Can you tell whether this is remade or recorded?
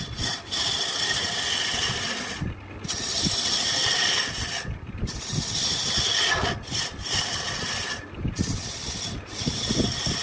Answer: recorded